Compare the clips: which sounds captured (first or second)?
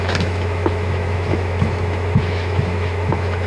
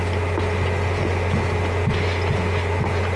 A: second